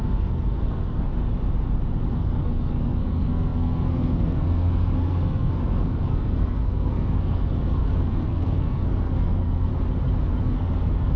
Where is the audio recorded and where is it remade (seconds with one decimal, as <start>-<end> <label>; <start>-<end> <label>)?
0.0-1.1 remade; 1.1-2.1 recorded; 2.1-9.7 remade; 9.7-10.4 recorded; 10.4-11.2 remade